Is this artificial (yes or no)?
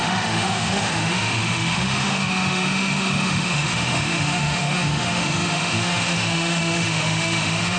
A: yes